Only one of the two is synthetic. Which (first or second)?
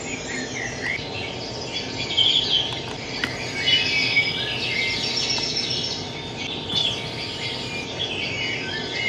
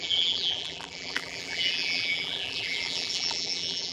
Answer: second